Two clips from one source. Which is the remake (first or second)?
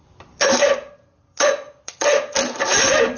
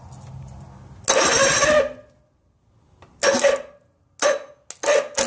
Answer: first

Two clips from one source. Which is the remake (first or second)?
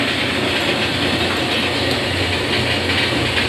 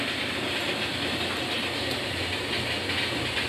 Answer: second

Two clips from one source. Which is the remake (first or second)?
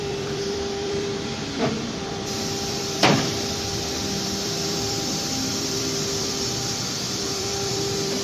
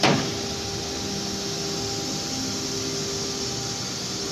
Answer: first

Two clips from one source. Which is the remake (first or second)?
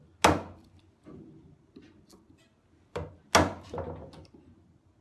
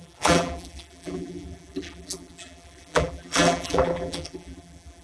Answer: second